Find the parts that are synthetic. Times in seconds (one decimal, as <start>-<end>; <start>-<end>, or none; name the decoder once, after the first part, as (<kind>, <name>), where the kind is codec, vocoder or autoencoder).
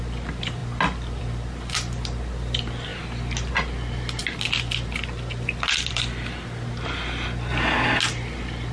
none